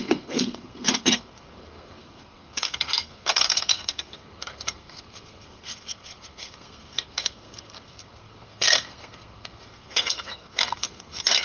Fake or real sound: fake